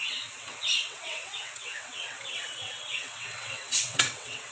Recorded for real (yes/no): no